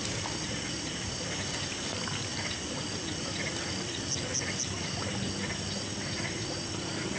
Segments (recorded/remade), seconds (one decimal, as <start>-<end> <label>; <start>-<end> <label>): 0.0-7.2 recorded

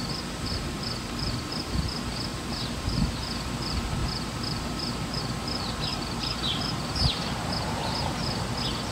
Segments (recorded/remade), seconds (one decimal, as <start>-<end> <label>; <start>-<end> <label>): 0.0-2.3 recorded; 2.3-3.0 remade; 3.0-4.0 recorded; 4.0-5.2 remade; 5.2-5.9 recorded; 5.9-8.4 remade; 8.4-8.9 recorded

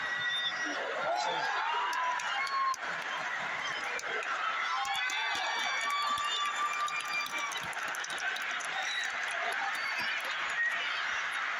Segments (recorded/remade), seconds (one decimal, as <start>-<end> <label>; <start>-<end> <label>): 0.0-2.8 recorded; 2.8-4.4 remade; 4.4-8.6 recorded; 8.6-10.8 remade; 10.8-11.6 recorded